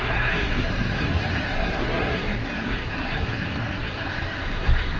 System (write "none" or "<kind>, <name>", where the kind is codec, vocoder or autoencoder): codec, SNAC